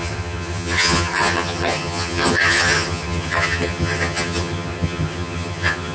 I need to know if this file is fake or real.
fake